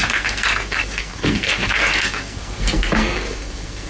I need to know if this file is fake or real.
fake